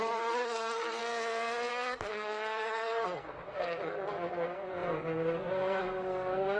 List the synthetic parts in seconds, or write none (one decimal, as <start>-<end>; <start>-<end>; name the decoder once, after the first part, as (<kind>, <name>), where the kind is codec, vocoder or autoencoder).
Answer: 0.0-1.0 (codec, SNAC); 1.7-6.6